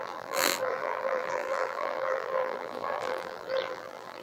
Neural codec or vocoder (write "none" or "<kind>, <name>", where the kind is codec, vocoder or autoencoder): vocoder, BigVGAN v2